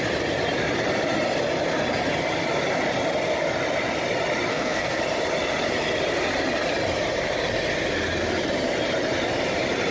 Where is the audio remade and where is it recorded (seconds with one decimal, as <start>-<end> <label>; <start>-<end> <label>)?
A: 0.0-4.5 recorded; 4.5-5.0 remade; 5.0-9.9 recorded